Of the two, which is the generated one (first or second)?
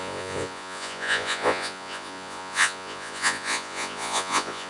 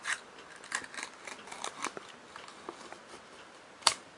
first